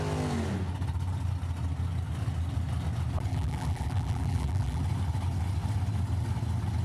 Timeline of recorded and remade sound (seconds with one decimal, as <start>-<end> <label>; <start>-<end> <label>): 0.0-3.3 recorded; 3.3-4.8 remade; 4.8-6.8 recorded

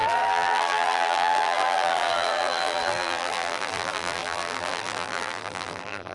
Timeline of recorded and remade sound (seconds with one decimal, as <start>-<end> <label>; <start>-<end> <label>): 0.0-6.1 remade

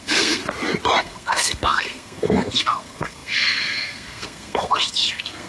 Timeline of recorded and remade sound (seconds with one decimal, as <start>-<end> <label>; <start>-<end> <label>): 0.0-0.4 remade; 0.4-1.0 recorded; 1.0-5.5 remade